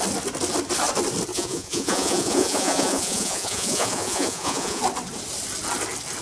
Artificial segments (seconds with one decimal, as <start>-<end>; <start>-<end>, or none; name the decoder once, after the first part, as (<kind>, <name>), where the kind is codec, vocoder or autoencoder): 1.3-4.8 (vocoder, Vocos)